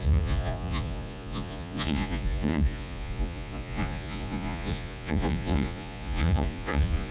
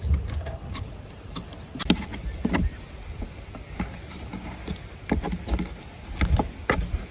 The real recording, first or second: second